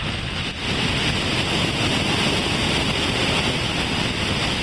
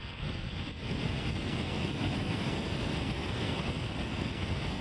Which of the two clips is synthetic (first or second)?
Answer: second